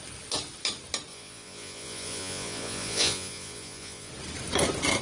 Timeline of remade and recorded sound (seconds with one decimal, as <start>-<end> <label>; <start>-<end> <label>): 0.0-1.1 recorded; 1.1-4.1 remade; 4.1-5.0 recorded

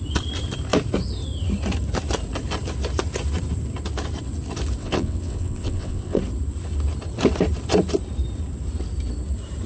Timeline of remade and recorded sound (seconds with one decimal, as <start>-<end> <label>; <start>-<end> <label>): 0.0-4.8 recorded; 4.8-6.2 remade; 6.2-9.7 recorded